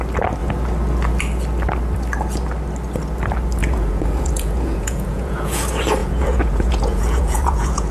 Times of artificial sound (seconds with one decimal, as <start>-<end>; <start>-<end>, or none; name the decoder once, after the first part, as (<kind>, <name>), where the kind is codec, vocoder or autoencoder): 3.6-5.6 (vocoder, Vocos); 6.0-7.9